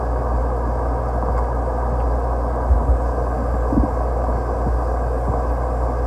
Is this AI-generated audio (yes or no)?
no